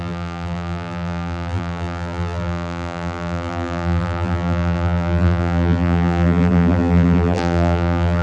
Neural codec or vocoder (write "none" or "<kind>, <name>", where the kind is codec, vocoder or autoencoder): vocoder, BigVGAN v2